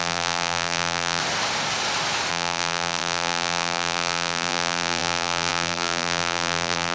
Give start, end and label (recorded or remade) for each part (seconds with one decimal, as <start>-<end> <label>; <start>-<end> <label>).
0.0-1.2 remade; 1.2-2.3 recorded; 2.3-6.9 remade

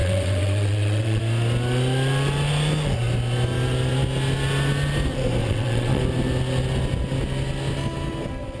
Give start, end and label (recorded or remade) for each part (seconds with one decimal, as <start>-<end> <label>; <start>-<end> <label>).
0.0-1.2 remade; 1.2-5.4 recorded; 5.4-6.0 remade; 6.0-8.6 recorded

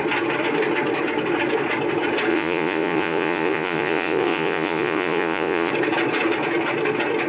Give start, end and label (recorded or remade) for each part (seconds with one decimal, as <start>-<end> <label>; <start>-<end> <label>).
0.0-2.3 recorded; 2.3-5.7 remade; 5.7-7.3 recorded